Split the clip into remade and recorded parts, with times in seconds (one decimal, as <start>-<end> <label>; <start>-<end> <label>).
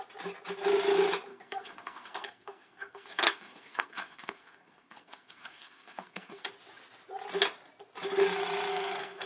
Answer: 0.0-1.3 recorded; 1.3-6.5 remade; 6.5-8.7 recorded; 8.7-9.3 remade